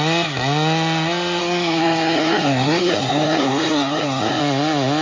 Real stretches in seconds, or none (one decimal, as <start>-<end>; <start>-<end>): 0.0-1.4; 4.4-5.0